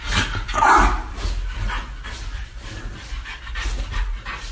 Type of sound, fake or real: real